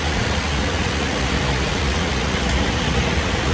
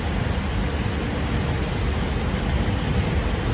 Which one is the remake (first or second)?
first